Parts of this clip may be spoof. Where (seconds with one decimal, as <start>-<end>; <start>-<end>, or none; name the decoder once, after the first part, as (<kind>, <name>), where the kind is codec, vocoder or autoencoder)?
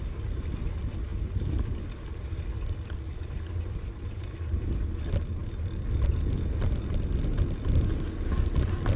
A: none